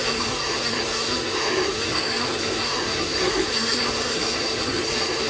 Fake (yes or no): yes